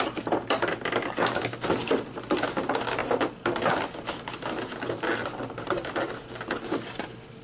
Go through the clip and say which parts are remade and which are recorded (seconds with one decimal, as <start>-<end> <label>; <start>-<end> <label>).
0.0-7.4 recorded